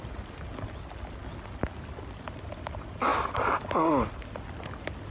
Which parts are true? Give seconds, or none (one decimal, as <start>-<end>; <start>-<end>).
0.0-5.1